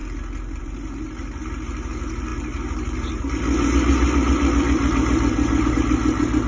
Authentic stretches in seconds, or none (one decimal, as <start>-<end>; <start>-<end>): 0.0-0.6